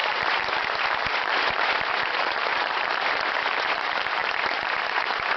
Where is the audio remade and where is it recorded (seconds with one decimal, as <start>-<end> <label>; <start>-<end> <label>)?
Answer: 0.0-5.4 remade